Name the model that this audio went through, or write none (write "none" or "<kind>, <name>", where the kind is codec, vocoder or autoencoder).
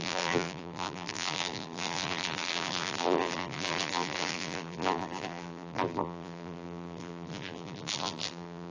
vocoder, BigVGAN v2